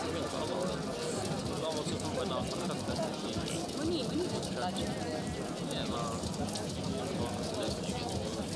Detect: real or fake real